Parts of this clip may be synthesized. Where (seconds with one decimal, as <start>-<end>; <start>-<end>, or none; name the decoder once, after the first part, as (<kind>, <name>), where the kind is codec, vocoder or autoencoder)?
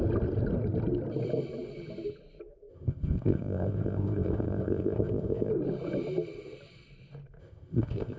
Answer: 2.7-5.5 (codec, ZipCodec); 7.4-8.2